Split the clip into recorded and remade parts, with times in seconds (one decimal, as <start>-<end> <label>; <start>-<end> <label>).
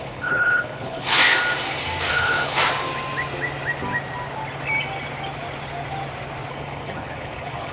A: 0.0-1.2 remade; 1.2-2.1 recorded; 2.1-2.6 remade; 2.6-6.5 recorded; 6.5-7.7 remade